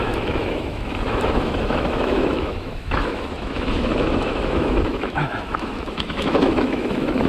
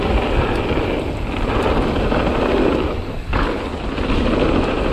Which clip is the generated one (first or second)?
first